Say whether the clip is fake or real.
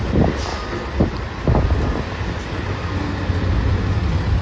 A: real